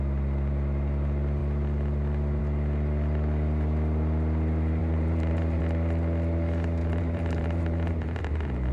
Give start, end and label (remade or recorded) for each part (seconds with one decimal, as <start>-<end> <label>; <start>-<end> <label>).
0.0-4.8 recorded; 4.8-5.6 remade; 5.6-6.8 recorded; 6.8-8.7 remade